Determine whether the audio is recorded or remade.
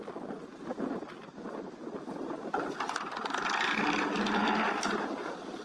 recorded